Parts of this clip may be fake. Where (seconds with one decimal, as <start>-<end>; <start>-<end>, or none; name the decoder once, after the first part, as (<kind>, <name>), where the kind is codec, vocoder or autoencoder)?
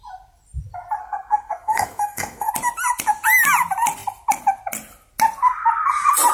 1.0-2.5 (codec, SNAC)